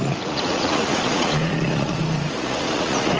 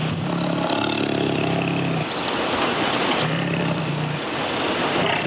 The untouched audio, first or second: second